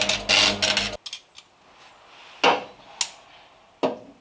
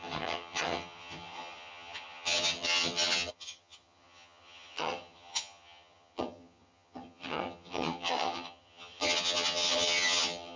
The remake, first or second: second